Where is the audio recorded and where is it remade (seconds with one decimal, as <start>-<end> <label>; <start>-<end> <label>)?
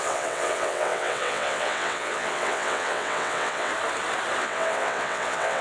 0.0-3.7 remade; 3.7-4.4 recorded; 4.4-5.6 remade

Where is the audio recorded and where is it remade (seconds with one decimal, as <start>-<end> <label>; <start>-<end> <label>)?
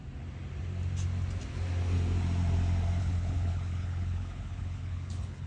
0.0-3.0 recorded; 3.0-5.5 remade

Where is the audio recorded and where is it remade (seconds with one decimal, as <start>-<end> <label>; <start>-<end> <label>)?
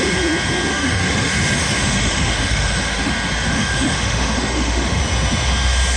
0.0-0.7 recorded; 0.7-3.1 remade; 3.1-3.5 recorded; 3.5-5.0 remade; 5.0-6.0 recorded